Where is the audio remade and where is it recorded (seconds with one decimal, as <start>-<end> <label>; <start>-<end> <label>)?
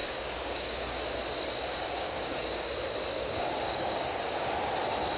0.0-1.0 remade; 1.0-1.7 recorded; 1.7-2.7 remade; 2.7-3.2 recorded; 3.2-4.2 remade; 4.2-5.2 recorded